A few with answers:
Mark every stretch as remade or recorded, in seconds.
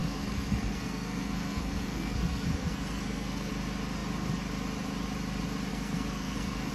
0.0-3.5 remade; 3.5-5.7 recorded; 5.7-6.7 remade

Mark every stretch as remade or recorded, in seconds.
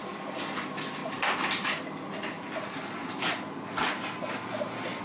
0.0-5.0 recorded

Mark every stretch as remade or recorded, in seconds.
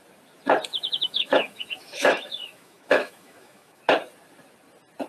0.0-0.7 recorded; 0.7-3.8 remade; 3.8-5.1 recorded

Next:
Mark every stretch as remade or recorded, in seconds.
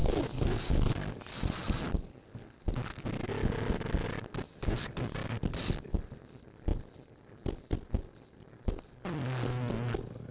0.0-10.3 recorded